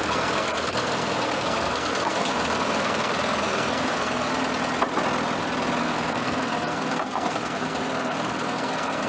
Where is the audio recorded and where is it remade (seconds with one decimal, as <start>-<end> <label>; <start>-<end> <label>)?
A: 0.0-4.3 remade; 4.3-5.8 recorded; 5.8-9.1 remade